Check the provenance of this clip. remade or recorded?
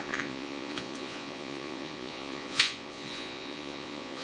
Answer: remade